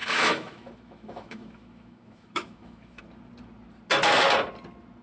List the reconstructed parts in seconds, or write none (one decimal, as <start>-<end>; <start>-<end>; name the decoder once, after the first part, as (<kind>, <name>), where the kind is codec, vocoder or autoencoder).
0.0-3.0 (autoencoder, DAC-VAE)